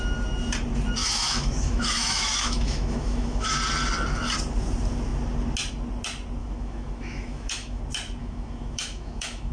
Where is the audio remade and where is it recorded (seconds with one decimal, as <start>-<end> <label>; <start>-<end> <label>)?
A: 0.0-1.0 recorded; 1.0-3.6 remade; 3.6-6.4 recorded; 6.4-7.8 remade; 7.8-8.2 recorded; 8.2-9.5 remade